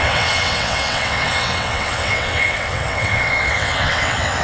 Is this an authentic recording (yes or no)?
no